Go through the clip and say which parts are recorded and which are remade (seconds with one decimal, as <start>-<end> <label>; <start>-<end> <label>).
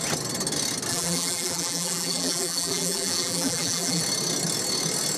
0.0-0.9 recorded; 0.9-4.0 remade; 4.0-5.2 recorded